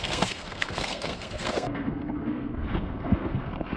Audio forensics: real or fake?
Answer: fake